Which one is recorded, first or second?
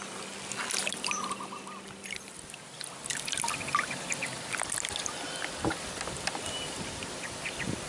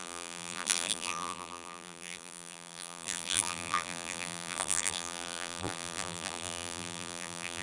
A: first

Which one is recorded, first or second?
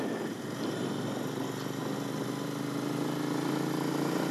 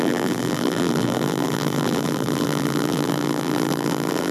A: first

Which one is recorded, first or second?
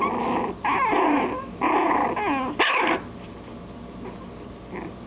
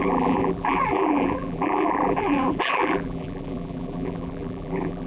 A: first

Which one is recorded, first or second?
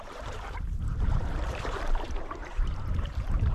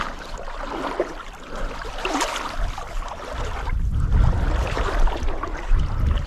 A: second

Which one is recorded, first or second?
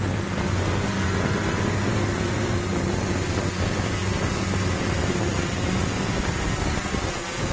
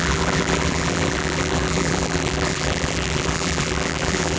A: first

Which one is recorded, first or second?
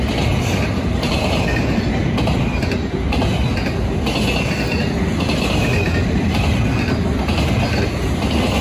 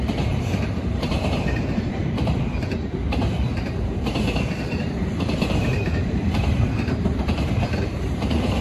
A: first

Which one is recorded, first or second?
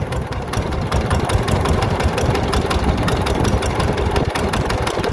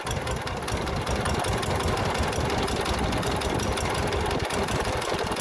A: second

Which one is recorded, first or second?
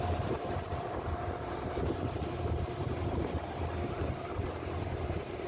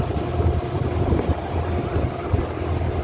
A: second